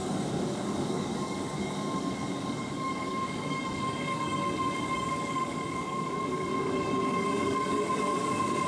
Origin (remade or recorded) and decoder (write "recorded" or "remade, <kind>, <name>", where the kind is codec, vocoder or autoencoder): remade, codec, DAC